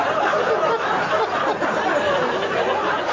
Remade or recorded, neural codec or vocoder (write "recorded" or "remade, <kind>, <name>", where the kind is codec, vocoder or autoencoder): recorded